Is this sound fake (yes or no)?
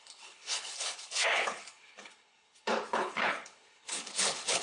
yes